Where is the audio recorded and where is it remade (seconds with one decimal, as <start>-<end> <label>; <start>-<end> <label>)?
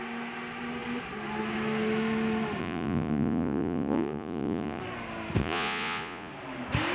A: 0.0-2.6 recorded; 2.6-4.8 remade; 4.8-5.4 recorded; 5.4-6.3 remade; 6.3-6.9 recorded